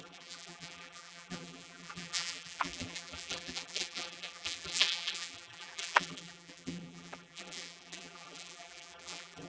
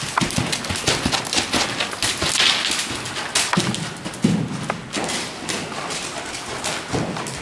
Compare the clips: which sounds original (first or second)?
second